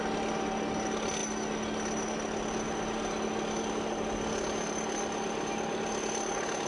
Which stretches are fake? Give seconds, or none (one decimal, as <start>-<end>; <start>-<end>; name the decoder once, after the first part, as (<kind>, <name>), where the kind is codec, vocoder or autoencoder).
none